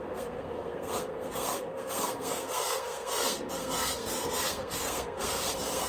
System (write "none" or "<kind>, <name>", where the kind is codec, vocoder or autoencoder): codec, SNAC